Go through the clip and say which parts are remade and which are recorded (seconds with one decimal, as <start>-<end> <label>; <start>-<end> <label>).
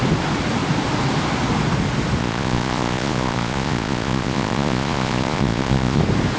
0.0-2.2 recorded; 2.2-6.0 remade; 6.0-6.4 recorded